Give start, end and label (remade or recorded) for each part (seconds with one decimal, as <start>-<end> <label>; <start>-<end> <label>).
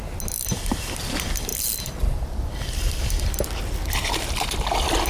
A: 0.0-1.5 recorded; 1.5-3.0 remade; 3.0-5.1 recorded